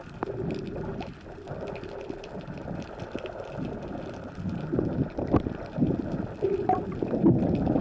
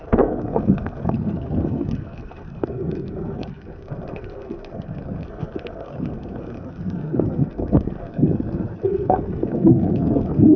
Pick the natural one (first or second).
first